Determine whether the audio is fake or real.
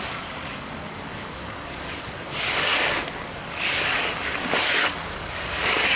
fake